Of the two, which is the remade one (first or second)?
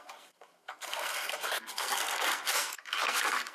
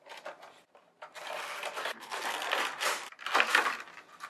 first